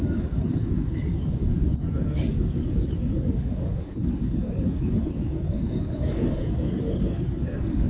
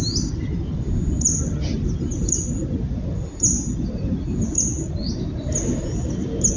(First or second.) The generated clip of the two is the first